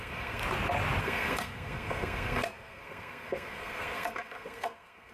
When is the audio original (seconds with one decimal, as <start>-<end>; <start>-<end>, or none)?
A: 0.4-1.0